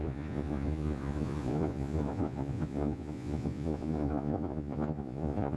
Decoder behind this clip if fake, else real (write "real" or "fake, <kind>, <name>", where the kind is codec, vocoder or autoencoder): fake, vocoder, Vocos